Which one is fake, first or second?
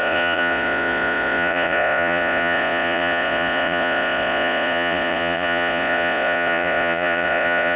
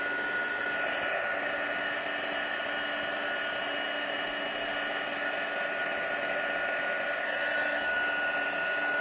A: first